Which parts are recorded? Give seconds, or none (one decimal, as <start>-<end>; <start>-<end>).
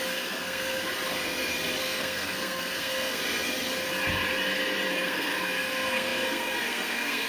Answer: 0.9-1.8; 3.2-4.9